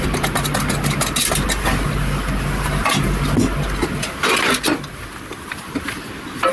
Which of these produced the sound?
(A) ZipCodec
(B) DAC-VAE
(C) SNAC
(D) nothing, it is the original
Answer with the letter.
D